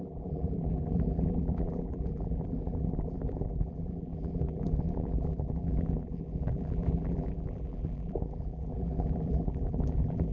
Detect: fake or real fake